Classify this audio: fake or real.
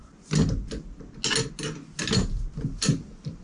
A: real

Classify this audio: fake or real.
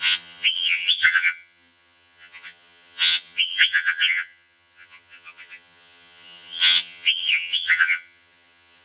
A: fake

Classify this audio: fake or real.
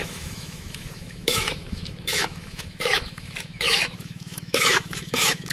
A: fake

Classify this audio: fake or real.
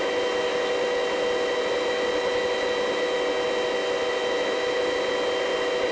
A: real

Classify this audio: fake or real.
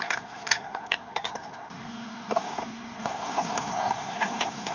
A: fake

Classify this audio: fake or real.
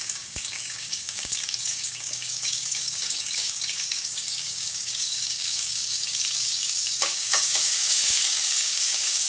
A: fake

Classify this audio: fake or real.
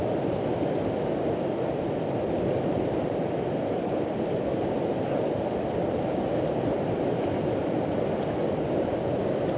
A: real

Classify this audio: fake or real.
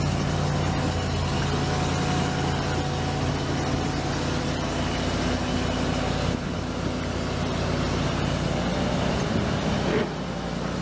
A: real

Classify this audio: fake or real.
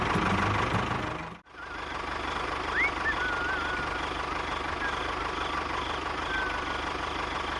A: real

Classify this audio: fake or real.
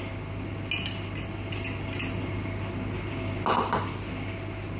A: real